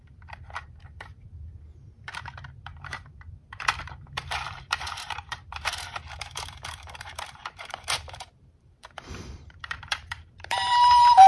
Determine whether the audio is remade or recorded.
remade